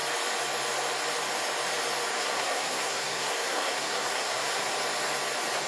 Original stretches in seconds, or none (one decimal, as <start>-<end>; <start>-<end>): 0.0-2.2; 4.7-5.7